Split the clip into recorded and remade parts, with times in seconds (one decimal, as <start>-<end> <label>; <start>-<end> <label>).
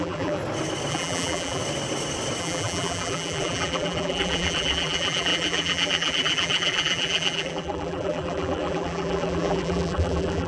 0.0-0.4 remade; 0.4-0.9 recorded; 0.9-1.6 remade; 1.6-2.4 recorded; 2.4-10.5 remade